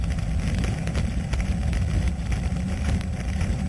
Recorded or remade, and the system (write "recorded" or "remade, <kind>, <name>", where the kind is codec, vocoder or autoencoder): remade, vocoder, BigVGAN v2